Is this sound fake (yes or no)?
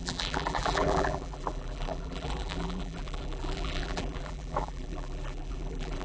yes